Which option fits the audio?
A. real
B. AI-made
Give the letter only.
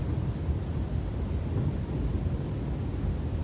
A